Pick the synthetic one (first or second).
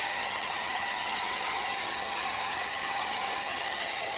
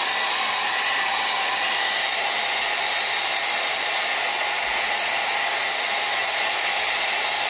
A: first